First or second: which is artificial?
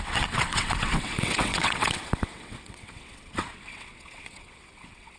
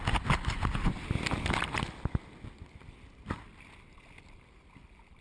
first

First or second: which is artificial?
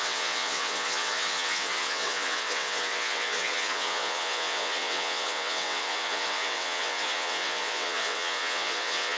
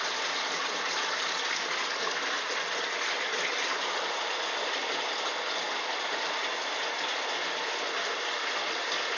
first